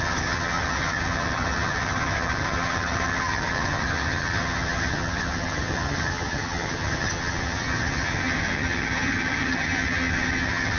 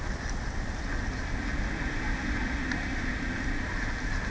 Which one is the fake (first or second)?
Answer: first